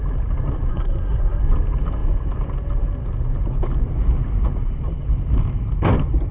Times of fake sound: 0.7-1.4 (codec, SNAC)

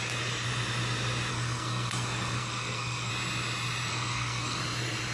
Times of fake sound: 1.3-3.1 (codec, SNAC); 3.9-4.6

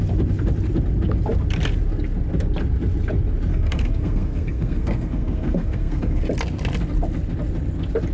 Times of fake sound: 3.5-6.2 (codec, SNAC)

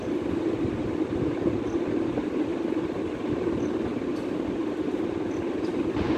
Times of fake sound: none

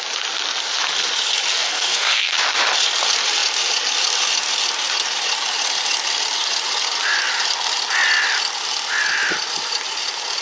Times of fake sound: 1.5-2.3 (codec, SNAC)